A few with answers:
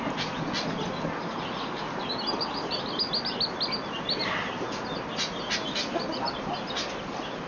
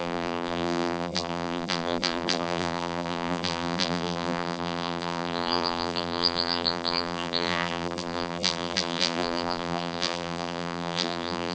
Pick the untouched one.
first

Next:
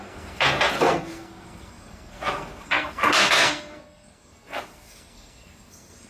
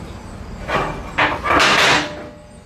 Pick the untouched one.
second